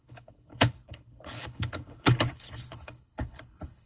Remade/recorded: remade